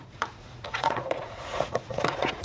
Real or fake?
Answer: fake